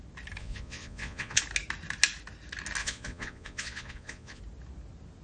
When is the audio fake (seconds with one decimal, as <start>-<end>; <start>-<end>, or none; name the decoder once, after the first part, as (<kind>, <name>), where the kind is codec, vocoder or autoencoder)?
0.4-1.4 (vocoder, Vocos); 2.8-4.4